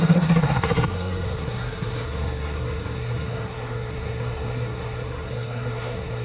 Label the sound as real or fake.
fake